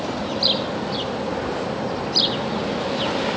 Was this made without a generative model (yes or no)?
yes